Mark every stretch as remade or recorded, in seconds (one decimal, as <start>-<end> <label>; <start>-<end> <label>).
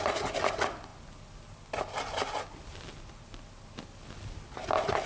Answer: 0.0-5.1 recorded